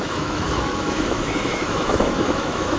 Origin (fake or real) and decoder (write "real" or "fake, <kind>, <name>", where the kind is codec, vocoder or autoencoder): fake, autoencoder, DAC-VAE